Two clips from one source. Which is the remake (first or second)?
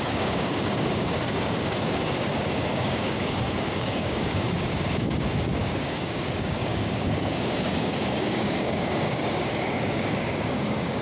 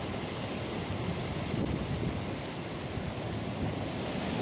first